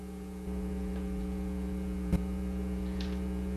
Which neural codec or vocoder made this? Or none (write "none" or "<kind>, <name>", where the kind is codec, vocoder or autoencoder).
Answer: vocoder, Vocos